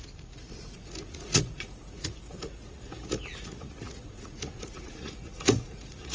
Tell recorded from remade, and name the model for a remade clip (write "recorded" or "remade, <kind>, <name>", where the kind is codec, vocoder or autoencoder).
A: remade, vocoder, Vocos